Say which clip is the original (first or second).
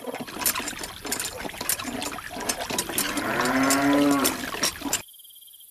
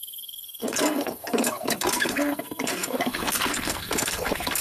first